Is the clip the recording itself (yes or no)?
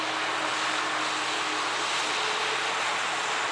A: yes